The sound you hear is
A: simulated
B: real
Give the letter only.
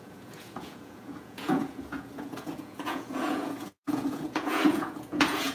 A